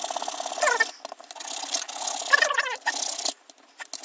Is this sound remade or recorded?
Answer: recorded